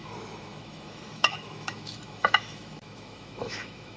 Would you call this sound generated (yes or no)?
yes